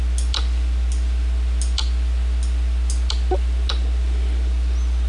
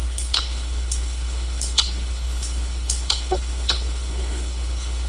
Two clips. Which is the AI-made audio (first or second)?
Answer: second